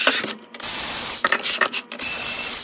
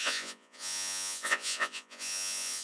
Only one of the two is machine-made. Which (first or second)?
second